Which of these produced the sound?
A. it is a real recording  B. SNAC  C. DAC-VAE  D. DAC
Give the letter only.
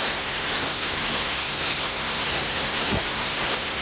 B